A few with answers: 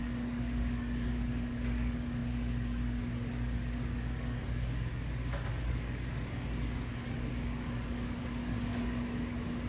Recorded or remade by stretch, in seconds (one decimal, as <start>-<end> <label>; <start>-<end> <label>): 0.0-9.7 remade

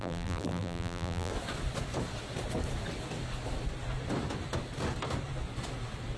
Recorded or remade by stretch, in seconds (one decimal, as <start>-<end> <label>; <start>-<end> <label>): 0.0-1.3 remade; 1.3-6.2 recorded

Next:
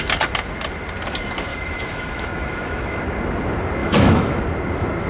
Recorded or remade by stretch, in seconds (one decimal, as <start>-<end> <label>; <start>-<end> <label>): 0.0-1.5 recorded; 1.5-3.0 remade; 3.0-3.8 recorded; 3.8-4.4 remade; 4.4-5.1 recorded

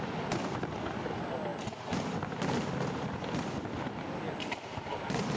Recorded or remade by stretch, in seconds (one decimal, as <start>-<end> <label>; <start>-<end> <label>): 0.0-5.4 recorded